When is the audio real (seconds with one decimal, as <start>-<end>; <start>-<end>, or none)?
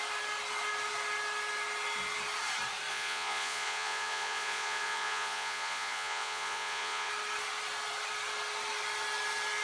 0.0-2.9; 7.1-9.6